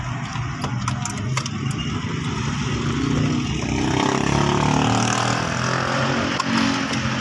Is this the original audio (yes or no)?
yes